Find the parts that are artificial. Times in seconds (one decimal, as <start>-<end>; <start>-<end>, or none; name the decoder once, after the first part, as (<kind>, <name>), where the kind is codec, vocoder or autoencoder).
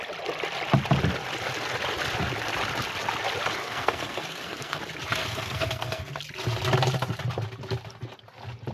3.6-4.8 (codec, SNAC); 5.2-6.2